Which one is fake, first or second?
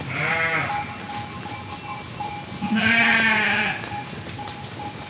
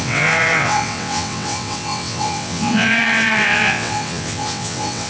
second